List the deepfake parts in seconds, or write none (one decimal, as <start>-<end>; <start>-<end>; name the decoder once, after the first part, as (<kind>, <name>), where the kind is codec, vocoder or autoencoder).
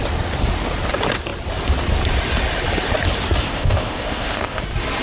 3.4-4.6 (codec, ZipCodec)